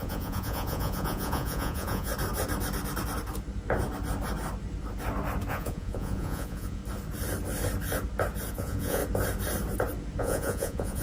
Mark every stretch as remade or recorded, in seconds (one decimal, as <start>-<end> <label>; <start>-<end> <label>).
0.0-2.1 remade; 2.1-5.5 recorded; 5.5-6.8 remade; 6.8-8.5 recorded; 8.5-9.0 remade; 9.0-10.2 recorded; 10.2-11.0 remade